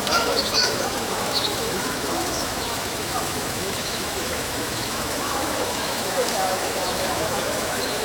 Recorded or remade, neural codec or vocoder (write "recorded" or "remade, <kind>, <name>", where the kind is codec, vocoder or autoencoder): remade, autoencoder, DAC-VAE